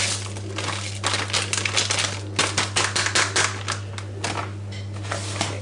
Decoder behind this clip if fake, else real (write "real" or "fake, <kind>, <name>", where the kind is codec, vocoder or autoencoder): real